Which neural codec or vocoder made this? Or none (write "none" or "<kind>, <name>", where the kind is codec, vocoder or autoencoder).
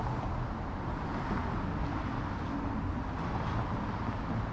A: none